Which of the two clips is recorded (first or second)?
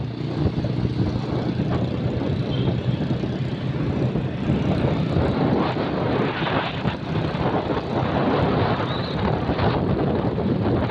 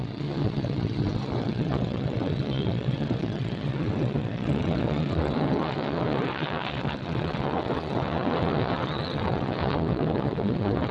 first